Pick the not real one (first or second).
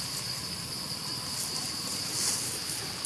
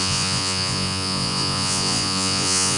second